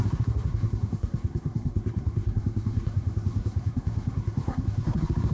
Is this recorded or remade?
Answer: remade